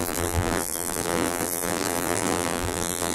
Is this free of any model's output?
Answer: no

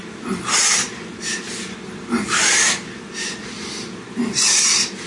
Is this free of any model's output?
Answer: no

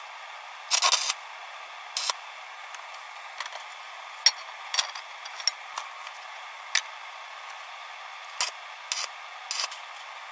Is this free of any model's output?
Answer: yes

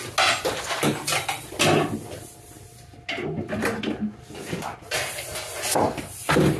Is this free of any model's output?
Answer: yes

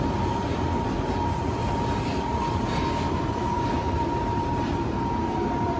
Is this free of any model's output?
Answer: no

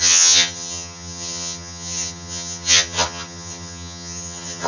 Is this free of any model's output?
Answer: no